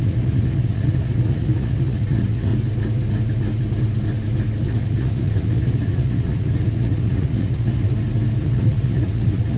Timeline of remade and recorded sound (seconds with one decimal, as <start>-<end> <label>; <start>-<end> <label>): 0.0-2.5 remade; 2.5-4.6 recorded; 4.6-7.9 remade; 7.9-8.4 recorded; 8.4-9.6 remade